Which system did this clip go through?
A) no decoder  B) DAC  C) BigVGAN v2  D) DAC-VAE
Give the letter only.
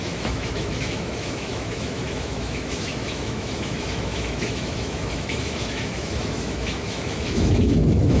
D